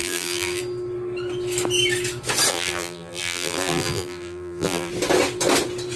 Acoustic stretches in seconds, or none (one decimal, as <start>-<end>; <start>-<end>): 0.6-2.5; 4.9-6.0